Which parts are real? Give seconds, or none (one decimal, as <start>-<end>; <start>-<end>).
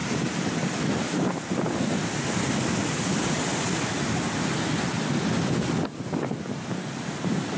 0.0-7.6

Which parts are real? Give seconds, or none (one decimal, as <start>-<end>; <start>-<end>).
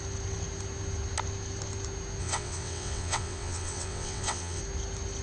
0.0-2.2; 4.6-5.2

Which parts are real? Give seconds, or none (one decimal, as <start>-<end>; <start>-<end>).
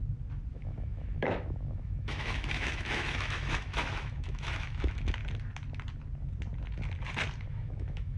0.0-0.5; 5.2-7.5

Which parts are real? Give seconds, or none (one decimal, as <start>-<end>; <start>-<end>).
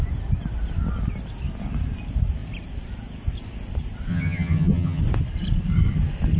0.0-4.1; 5.0-6.4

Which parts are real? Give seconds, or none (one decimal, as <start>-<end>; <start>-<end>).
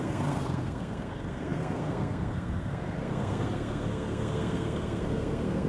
none